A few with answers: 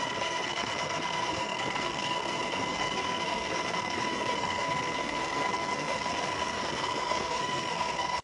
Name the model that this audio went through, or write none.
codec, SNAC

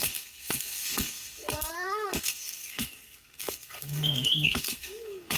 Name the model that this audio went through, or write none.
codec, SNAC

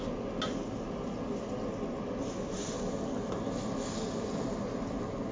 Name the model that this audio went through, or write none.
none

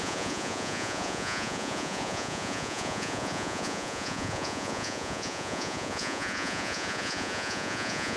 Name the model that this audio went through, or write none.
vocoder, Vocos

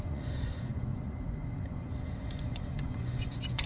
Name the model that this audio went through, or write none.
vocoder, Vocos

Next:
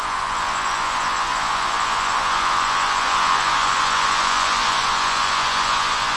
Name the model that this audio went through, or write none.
vocoder, Vocos